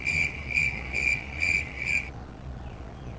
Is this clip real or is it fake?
fake